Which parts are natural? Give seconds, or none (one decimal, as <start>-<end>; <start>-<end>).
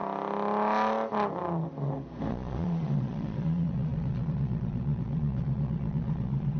0.0-2.3